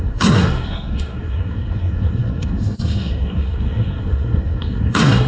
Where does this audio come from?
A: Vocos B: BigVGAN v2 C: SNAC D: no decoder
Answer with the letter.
C